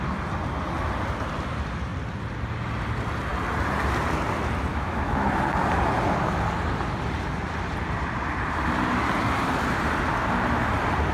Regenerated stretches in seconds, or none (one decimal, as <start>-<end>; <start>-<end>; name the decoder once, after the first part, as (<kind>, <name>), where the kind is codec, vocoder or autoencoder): 4.7-5.3 (autoencoder, DAC-VAE)